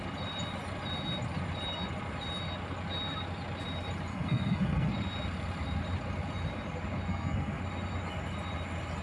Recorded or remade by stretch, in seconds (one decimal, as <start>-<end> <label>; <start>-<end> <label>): 0.0-4.1 recorded; 4.1-4.9 remade; 4.9-7.1 recorded; 7.1-7.6 remade; 7.6-9.0 recorded